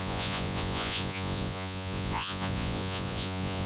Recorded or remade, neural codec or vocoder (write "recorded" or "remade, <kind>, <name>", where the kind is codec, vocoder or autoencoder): remade, vocoder, Vocos